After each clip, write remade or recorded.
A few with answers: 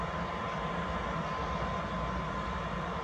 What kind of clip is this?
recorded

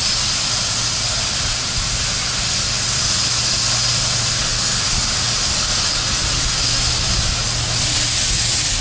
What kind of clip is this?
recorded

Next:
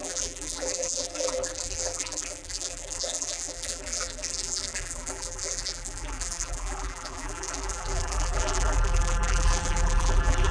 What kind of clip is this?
remade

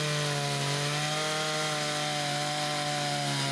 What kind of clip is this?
recorded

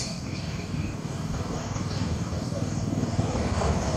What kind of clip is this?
remade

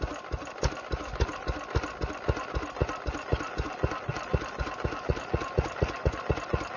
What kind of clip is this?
recorded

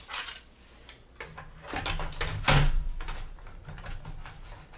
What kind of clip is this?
recorded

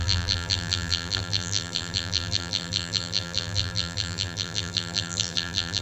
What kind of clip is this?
remade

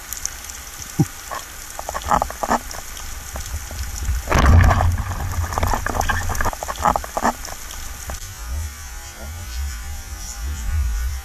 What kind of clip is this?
recorded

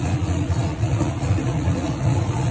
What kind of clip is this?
remade